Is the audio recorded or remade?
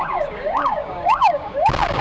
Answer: remade